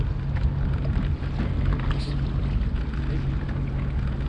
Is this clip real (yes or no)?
yes